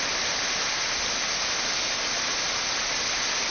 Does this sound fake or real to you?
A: real